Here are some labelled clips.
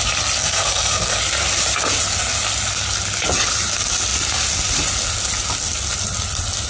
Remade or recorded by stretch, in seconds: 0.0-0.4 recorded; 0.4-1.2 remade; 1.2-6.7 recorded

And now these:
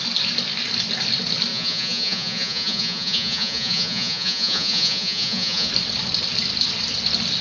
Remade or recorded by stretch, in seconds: 0.0-1.5 recorded; 1.5-5.7 remade; 5.7-7.4 recorded